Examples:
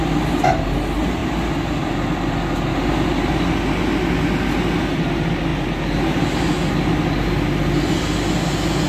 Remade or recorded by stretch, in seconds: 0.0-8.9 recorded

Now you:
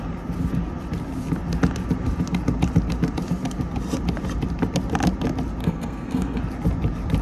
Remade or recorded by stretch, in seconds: 0.0-5.6 recorded; 5.6-6.4 remade; 6.4-7.2 recorded

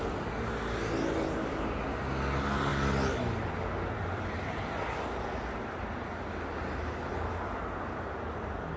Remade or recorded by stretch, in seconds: 0.0-8.8 recorded

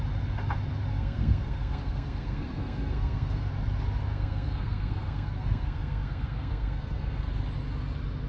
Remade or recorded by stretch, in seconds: 0.0-0.9 recorded; 0.9-3.5 remade; 3.5-4.1 recorded; 4.1-7.3 remade; 7.3-8.3 recorded